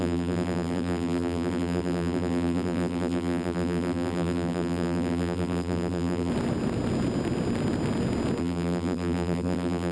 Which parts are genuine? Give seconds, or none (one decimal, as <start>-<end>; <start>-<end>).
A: 6.3-8.4